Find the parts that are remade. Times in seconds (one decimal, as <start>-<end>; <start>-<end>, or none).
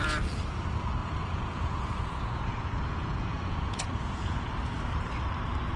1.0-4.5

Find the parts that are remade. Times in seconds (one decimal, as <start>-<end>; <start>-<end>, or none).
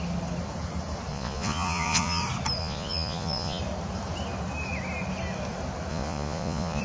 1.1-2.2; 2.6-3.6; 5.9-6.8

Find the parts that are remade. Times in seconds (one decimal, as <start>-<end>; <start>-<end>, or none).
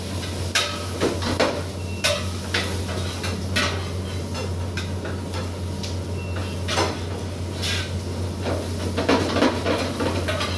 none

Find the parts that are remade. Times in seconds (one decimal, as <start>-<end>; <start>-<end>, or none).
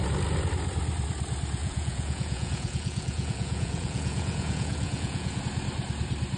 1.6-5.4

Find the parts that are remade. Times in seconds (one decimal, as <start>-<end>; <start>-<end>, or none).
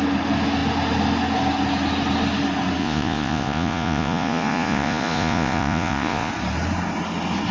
2.8-6.3